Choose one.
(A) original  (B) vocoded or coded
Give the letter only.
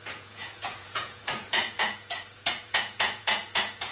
B